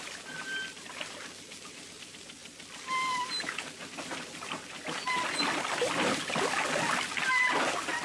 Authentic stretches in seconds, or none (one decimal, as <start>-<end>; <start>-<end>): none